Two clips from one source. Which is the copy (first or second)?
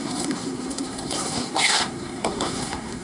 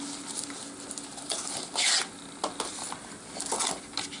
first